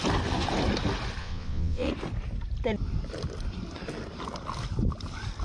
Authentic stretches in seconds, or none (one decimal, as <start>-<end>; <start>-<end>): 0.0-1.2; 1.9-5.4

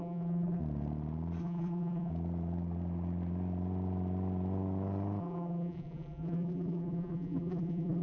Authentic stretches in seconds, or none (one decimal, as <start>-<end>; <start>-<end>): 0.6-1.4; 2.1-5.2

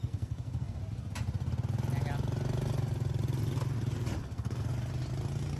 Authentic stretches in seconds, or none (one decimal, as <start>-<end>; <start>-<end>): 0.8-4.2; 4.7-5.6

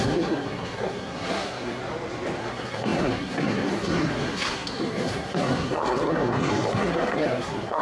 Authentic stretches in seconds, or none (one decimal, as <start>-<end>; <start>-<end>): 1.8-2.4

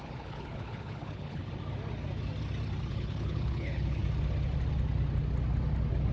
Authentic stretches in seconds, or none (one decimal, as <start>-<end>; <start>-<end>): 1.4-2.9; 4.0-6.1

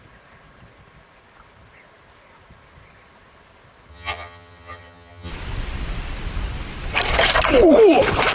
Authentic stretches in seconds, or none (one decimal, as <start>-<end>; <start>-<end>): 0.0-3.9; 5.3-8.3

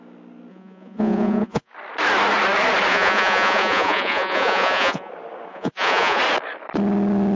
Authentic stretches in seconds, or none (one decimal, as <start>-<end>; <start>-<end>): 0.0-0.5; 1.7-2.9; 5.1-5.5; 6.2-7.4

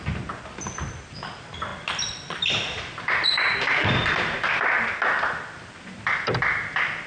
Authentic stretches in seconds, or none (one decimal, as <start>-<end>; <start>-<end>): 0.0-7.1